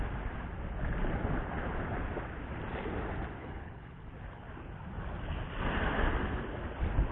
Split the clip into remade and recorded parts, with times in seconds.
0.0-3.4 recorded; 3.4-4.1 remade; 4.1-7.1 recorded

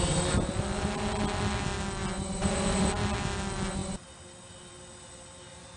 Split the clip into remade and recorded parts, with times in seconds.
0.0-5.8 recorded

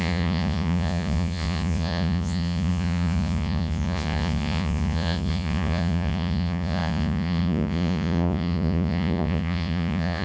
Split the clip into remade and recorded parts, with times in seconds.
0.0-10.2 remade

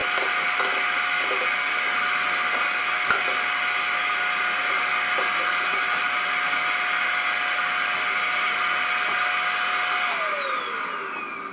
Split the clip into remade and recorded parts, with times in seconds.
0.0-11.5 recorded

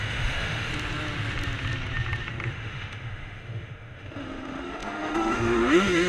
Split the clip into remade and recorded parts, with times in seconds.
0.0-0.7 remade; 0.7-2.5 recorded; 2.5-6.1 remade